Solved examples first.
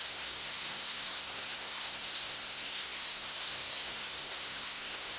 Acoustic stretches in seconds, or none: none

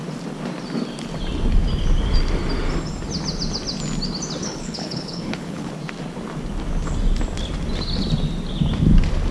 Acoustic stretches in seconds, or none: 0.0-4.4; 5.7-9.3

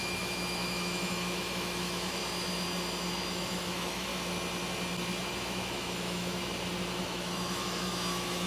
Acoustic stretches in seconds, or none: 2.2-3.3; 4.1-5.3; 6.4-7.0

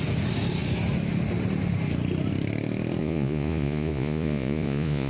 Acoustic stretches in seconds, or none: 0.0-3.0

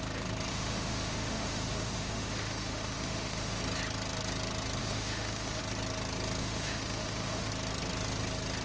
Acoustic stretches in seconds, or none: 0.0-0.5; 3.6-4.8; 5.6-6.4; 7.5-8.6